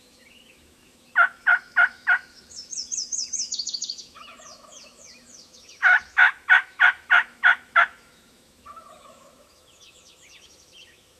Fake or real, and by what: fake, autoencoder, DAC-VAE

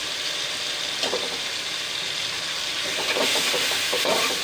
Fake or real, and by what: real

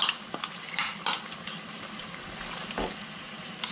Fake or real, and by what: real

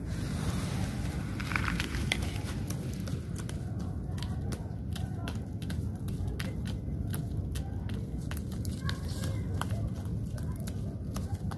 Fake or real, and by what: real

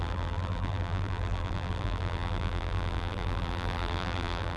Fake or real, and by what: fake, vocoder, BigVGAN v2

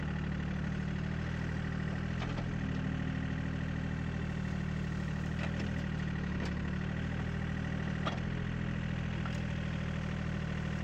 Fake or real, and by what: real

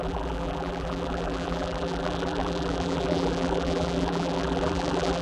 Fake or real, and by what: fake, vocoder, BigVGAN v2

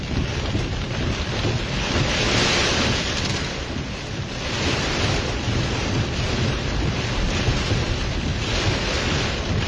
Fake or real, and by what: fake, vocoder, BigVGAN v2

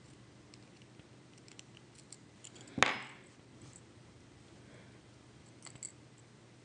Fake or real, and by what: real